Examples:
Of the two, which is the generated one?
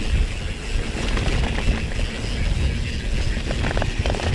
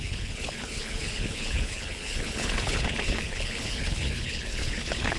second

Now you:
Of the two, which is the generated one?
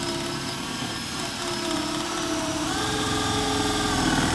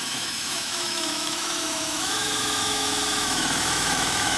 second